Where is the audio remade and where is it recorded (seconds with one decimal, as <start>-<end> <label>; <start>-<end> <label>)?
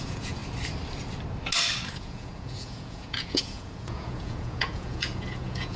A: 0.0-0.4 remade; 0.4-2.0 recorded; 2.0-5.8 remade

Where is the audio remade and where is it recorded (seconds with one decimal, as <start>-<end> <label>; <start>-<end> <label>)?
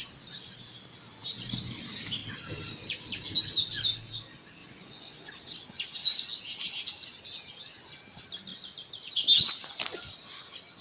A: 0.0-4.6 recorded; 4.6-5.3 remade; 5.3-10.8 recorded